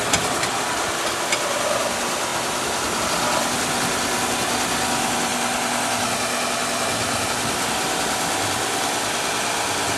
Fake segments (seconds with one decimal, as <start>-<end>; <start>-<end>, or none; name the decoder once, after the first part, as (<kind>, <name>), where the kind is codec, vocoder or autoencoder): 2.3-3.0 (vocoder, BigVGAN v2)

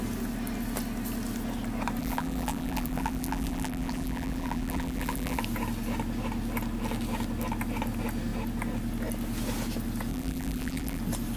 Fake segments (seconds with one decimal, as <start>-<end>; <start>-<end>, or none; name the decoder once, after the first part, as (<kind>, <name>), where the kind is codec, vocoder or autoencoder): 2.0-5.4 (vocoder, BigVGAN v2); 10.1-11.0

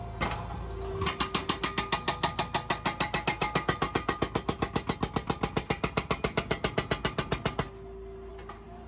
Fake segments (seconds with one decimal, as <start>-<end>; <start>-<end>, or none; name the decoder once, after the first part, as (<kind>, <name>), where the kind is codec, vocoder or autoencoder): 8.3-8.9 (vocoder, BigVGAN v2)

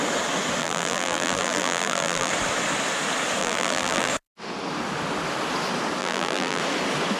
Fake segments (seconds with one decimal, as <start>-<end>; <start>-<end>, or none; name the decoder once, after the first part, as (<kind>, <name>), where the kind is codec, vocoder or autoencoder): 0.6-2.3 (vocoder, BigVGAN v2); 3.4-4.1; 6.0-6.6

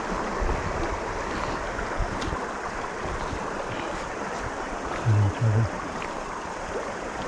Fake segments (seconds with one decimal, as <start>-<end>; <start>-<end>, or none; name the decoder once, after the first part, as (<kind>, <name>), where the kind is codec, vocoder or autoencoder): 5.4-6.5 (vocoder, BigVGAN v2)

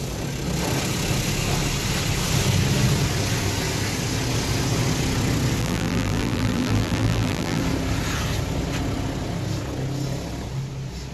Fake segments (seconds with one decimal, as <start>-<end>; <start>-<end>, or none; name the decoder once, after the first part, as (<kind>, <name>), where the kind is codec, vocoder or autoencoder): 5.6-7.6 (vocoder, BigVGAN v2)

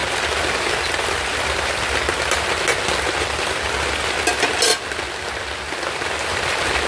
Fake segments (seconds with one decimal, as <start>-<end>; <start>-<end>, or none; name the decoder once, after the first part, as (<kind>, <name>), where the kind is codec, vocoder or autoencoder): none

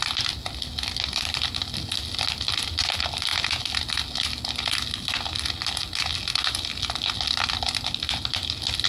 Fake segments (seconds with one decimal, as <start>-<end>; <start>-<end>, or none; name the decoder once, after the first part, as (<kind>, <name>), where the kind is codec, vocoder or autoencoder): 0.0-3.3 (vocoder, BigVGAN v2); 7.3-8.9